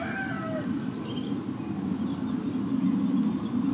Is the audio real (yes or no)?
yes